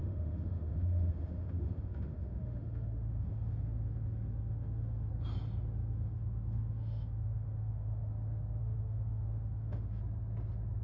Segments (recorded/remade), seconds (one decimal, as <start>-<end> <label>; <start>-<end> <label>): 0.0-5.1 remade; 5.1-5.8 recorded; 5.8-8.1 remade; 8.1-8.6 recorded; 8.6-10.0 remade; 10.0-10.8 recorded